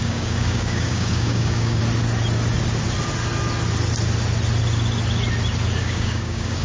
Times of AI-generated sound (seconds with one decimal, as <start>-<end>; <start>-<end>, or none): 0.0-1.8; 5.8-6.6